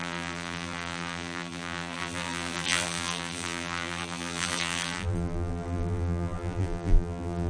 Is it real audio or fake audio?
fake